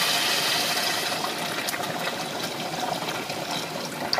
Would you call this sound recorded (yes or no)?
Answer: yes